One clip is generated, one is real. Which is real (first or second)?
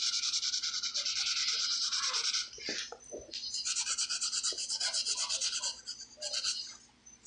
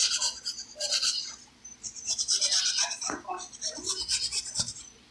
first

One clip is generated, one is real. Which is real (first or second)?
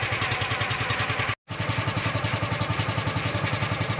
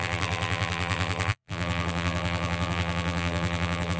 first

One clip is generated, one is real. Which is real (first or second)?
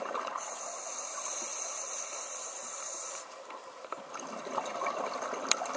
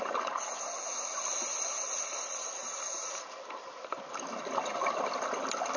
second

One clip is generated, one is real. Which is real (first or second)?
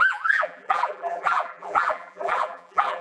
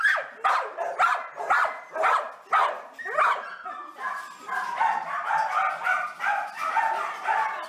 second